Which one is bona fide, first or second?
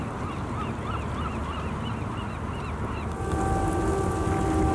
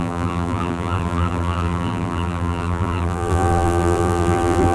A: first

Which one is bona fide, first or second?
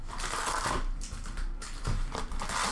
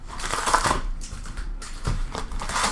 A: first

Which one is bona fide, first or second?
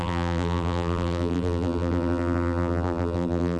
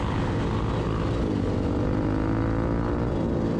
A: second